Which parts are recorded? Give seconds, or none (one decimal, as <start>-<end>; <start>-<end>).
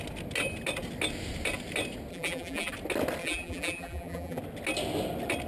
0.0-2.1; 2.7-3.2; 4.4-5.5